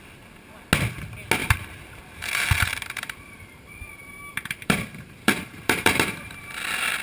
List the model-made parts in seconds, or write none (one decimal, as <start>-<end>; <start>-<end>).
1.4-3.8; 4.3-6.5